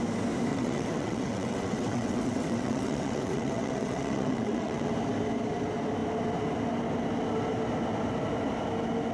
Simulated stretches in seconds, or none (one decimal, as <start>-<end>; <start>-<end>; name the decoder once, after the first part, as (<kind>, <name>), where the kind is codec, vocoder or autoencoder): 0.5-4.9 (vocoder, WaveNeXt)